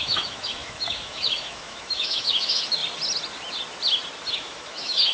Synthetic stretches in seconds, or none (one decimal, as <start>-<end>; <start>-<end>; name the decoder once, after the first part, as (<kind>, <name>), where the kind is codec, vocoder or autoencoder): 0.0-2.8 (autoencoder, DAC-VAE); 4.3-5.1